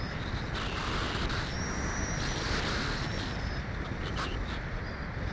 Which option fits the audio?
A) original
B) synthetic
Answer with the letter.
A